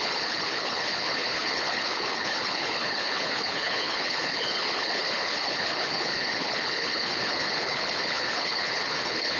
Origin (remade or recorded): remade